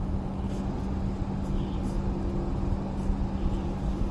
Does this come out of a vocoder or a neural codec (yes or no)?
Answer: no